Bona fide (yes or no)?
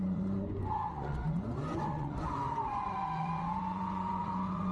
no